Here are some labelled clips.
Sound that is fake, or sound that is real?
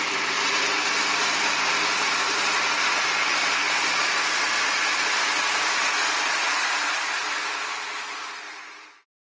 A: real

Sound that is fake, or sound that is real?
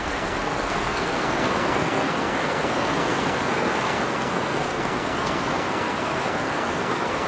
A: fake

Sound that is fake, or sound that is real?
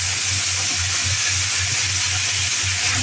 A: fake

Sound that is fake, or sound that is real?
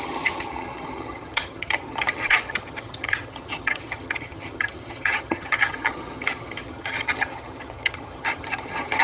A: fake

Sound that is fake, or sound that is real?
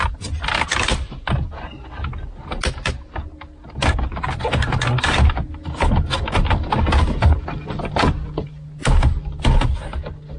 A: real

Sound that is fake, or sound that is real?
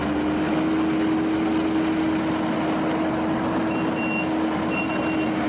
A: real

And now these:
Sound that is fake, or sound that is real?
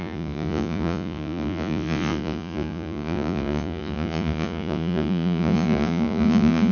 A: fake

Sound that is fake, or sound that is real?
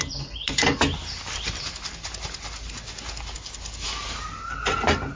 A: real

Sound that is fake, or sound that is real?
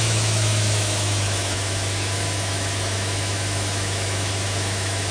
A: fake